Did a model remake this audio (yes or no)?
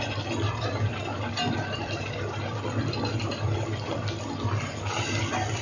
no